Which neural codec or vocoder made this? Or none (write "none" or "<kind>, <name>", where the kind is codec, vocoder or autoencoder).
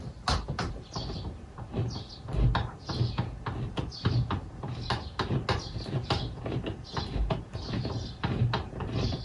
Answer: none